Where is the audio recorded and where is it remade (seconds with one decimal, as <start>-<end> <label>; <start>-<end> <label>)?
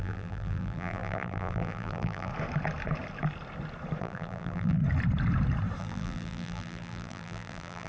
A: 0.0-2.3 remade; 2.3-4.0 recorded; 4.0-4.8 remade; 4.8-5.8 recorded; 5.8-7.9 remade